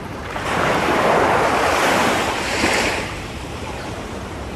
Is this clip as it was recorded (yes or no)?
no